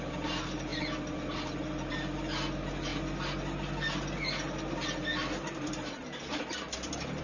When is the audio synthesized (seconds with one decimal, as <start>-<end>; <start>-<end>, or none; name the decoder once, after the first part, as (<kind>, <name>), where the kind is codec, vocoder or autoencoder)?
none